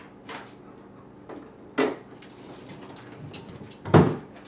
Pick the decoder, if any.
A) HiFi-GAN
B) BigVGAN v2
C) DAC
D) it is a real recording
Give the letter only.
D